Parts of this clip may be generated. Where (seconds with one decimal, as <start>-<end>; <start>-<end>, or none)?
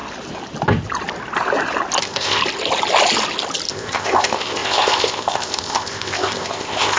2.0-2.4; 3.7-7.0